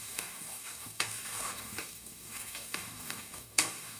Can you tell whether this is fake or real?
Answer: fake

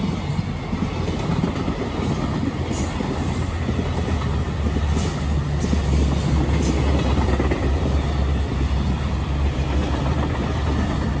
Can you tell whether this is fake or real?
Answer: real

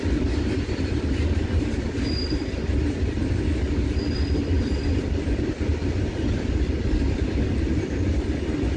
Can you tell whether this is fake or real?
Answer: real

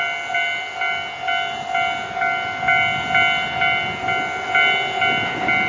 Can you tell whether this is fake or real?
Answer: real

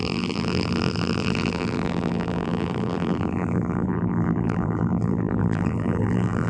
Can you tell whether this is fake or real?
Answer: fake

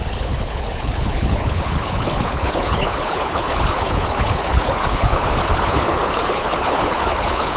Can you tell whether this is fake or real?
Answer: fake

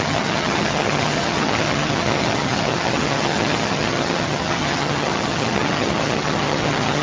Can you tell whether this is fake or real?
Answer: fake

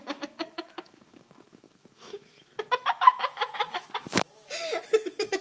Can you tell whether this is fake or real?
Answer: fake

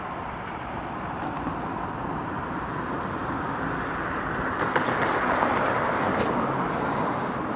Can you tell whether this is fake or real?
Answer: real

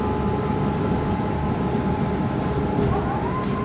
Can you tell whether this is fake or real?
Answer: real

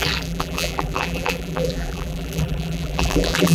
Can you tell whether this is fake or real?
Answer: fake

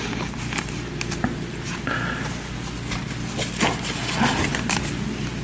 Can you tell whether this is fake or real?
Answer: real